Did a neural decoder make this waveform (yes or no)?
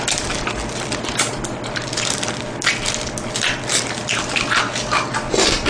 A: no